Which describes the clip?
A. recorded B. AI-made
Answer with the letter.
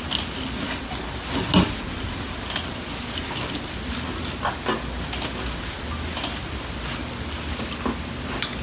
A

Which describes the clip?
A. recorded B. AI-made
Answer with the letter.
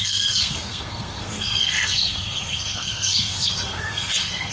B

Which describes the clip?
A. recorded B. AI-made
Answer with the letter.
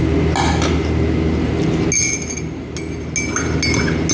A